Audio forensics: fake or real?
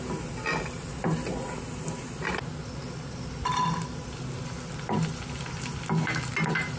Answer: real